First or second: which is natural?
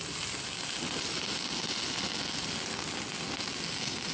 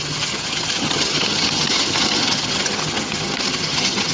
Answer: first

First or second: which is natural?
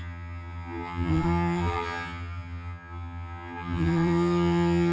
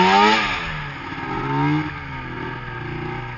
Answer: second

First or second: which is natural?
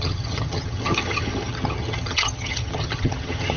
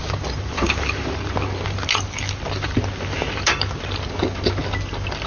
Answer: second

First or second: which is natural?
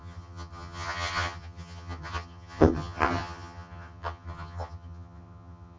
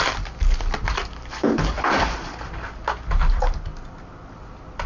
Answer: second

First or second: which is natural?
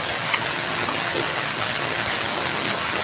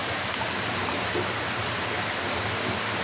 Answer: second